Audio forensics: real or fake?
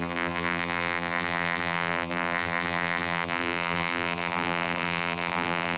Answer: fake